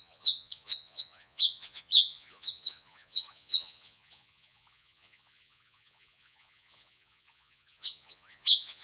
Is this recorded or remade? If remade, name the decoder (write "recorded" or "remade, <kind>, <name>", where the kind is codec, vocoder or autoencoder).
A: remade, vocoder, Vocos